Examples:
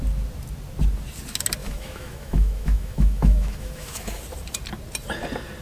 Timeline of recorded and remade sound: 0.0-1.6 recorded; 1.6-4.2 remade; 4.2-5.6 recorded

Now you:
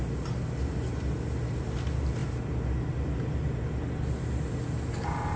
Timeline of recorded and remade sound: 0.0-5.4 recorded

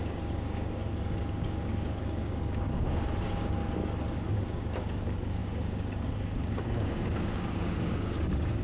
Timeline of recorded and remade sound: 0.0-3.6 remade; 3.6-4.3 recorded; 4.3-8.6 remade